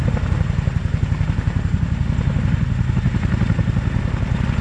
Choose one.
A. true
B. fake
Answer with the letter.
A